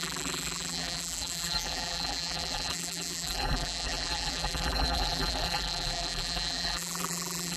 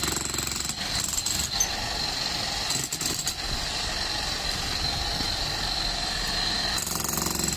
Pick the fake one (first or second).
first